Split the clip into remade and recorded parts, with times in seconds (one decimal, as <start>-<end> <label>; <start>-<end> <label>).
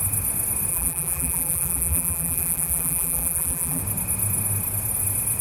0.0-0.7 recorded; 0.7-3.8 remade; 3.8-5.4 recorded